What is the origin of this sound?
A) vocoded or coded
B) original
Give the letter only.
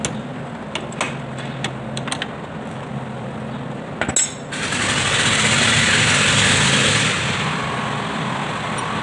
B